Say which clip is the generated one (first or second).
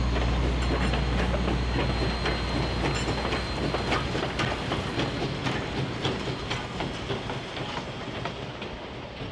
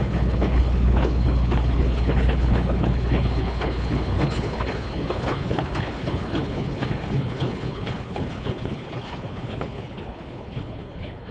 second